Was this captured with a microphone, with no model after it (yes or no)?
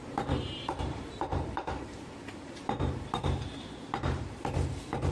no